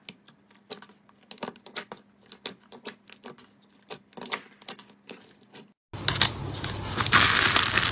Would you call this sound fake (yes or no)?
no